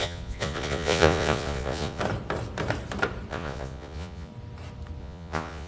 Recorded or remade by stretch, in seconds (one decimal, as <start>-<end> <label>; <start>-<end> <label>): 0.0-2.0 remade; 2.0-3.3 recorded; 3.3-4.3 remade; 4.3-5.0 recorded; 5.0-5.7 remade